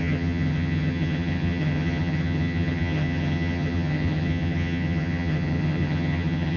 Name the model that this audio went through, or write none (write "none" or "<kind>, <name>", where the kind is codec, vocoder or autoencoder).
vocoder, HiFi-GAN